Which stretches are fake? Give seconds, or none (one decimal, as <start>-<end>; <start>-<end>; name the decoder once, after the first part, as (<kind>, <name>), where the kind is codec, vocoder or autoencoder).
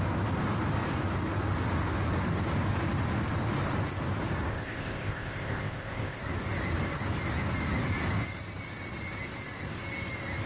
4.5-6.2 (codec, ZipCodec)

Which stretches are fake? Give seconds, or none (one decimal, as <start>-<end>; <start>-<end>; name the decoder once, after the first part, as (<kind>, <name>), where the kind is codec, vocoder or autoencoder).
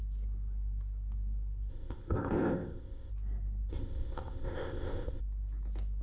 1.7-3.1 (codec, ZipCodec); 3.7-5.2